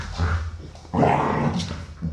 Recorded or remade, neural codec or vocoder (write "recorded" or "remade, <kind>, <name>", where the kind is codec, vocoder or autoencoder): recorded